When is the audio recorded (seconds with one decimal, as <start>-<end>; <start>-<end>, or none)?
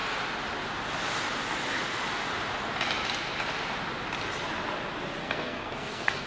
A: 0.0-5.2